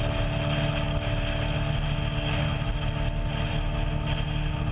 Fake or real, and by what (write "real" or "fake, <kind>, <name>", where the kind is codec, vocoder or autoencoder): real